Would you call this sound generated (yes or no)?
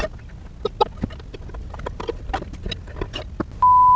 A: no